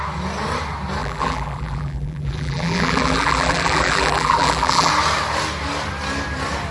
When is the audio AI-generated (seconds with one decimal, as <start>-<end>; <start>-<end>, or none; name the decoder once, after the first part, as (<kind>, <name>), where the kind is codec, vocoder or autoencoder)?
1.0-4.9 (vocoder, BigVGAN v2)